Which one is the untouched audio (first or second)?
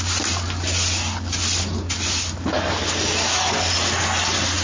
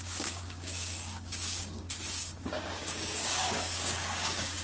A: first